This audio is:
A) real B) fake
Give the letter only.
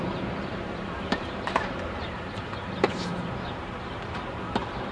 B